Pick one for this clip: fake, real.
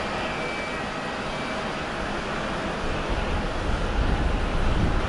real